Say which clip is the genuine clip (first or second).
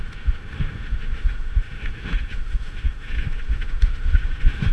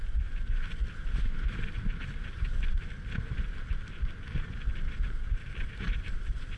second